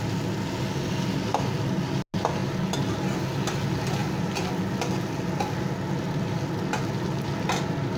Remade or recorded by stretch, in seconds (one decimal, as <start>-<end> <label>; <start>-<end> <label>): 0.0-8.0 recorded